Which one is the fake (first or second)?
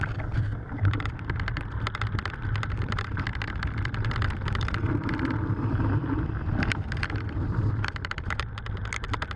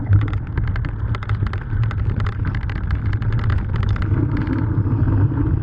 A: first